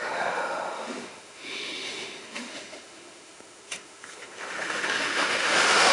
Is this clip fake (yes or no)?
yes